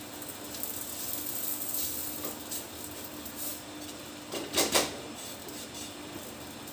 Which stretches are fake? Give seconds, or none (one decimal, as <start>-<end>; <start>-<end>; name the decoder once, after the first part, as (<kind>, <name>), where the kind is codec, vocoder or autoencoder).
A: 3.5-6.2 (vocoder, BigVGAN v2)